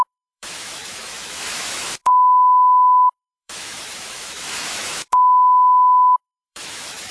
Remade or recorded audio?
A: remade